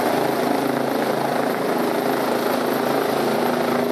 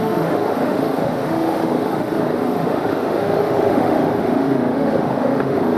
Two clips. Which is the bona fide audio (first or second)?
first